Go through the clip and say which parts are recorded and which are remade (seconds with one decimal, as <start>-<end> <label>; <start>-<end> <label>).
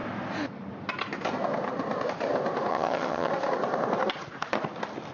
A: 0.0-2.7 recorded; 2.7-3.3 remade; 3.3-5.1 recorded